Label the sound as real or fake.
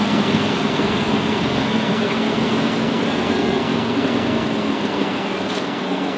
fake